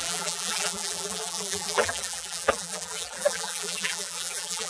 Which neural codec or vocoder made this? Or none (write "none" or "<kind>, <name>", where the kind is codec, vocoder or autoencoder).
vocoder, BigVGAN v2